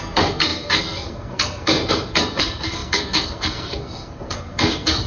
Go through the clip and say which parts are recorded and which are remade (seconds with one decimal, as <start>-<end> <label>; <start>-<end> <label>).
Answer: 0.0-5.1 remade

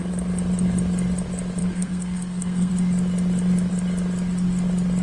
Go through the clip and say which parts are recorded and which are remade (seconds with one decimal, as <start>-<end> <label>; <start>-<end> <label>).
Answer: 0.0-1.6 recorded; 1.6-2.7 remade; 2.7-5.0 recorded

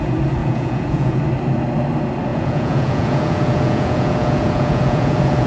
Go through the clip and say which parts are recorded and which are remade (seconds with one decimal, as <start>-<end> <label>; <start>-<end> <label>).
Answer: 0.0-0.4 recorded; 0.4-1.2 remade; 1.2-2.3 recorded; 2.3-5.5 remade

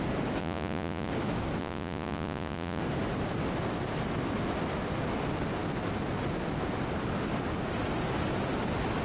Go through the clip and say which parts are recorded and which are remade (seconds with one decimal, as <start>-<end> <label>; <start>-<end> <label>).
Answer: 0.0-0.4 recorded; 0.4-1.1 remade; 1.1-1.6 recorded; 1.6-2.8 remade; 2.8-9.0 recorded

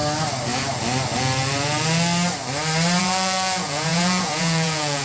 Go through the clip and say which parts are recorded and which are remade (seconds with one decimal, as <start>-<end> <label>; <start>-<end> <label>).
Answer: 0.0-3.0 recorded; 3.0-5.0 remade

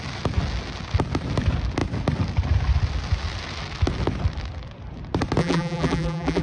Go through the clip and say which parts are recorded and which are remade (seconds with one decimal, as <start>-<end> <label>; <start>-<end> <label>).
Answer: 0.0-5.4 recorded; 5.4-6.4 remade

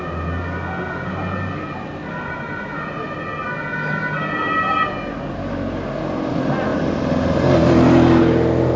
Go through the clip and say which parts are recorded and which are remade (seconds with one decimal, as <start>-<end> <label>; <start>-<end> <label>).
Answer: 0.0-8.8 recorded

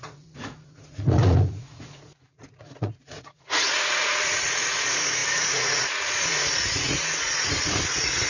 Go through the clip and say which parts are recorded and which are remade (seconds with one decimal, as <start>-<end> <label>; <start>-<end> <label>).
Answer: 0.0-8.3 remade